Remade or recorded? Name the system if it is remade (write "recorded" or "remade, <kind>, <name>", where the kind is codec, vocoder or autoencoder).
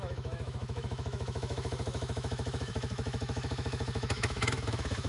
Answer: remade, autoencoder, DAC-VAE